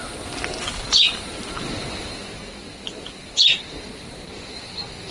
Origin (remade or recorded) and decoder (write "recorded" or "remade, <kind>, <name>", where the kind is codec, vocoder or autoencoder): recorded